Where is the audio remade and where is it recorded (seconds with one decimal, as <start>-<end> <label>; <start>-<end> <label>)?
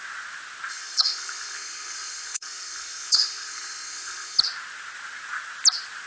0.0-0.7 recorded; 0.7-4.4 remade; 4.4-6.1 recorded